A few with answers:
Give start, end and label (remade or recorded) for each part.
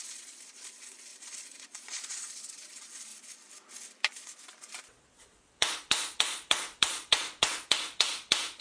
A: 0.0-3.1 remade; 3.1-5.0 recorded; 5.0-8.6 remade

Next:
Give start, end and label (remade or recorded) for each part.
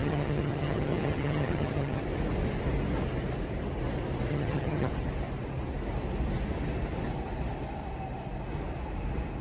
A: 0.0-2.0 remade; 2.0-4.3 recorded; 4.3-4.9 remade; 4.9-9.4 recorded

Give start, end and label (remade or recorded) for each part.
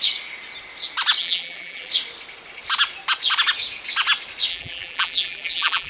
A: 0.0-1.2 recorded; 1.2-1.9 remade; 1.9-4.5 recorded; 4.5-5.9 remade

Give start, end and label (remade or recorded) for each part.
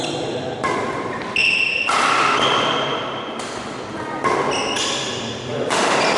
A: 0.0-6.2 recorded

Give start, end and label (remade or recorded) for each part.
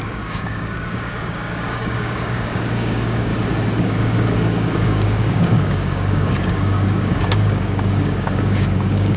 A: 0.0-3.3 remade; 3.3-3.8 recorded; 3.8-9.2 remade